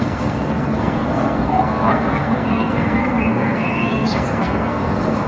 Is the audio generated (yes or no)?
yes